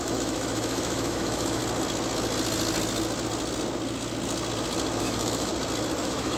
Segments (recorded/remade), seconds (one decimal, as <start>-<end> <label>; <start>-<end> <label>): 0.0-1.6 remade; 1.6-5.0 recorded; 5.0-5.5 remade; 5.5-6.0 recorded; 6.0-6.4 remade